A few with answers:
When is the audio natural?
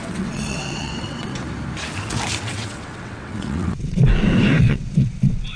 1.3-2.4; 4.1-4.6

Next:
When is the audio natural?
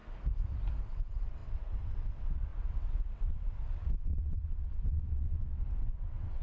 0.0-0.8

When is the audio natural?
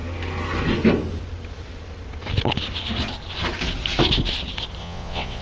0.0-4.8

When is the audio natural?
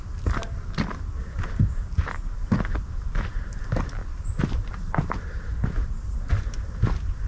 0.0-7.3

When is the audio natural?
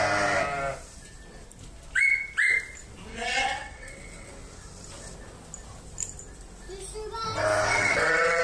0.0-3.1; 4.3-7.7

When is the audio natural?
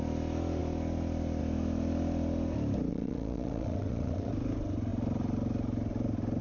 0.0-2.9; 4.3-6.4